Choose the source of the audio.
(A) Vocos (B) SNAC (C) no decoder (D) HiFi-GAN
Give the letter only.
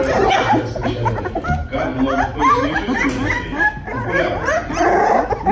C